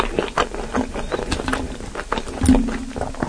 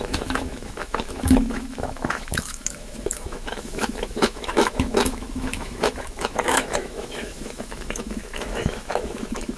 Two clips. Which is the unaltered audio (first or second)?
first